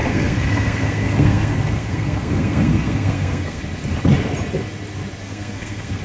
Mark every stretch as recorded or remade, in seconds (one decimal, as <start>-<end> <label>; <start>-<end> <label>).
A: 0.0-3.6 remade; 3.6-5.2 recorded; 5.2-6.0 remade